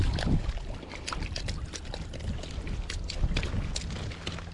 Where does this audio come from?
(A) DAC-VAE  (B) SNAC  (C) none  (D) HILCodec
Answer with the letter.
C